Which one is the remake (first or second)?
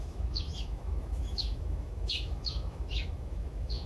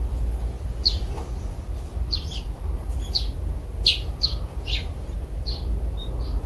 first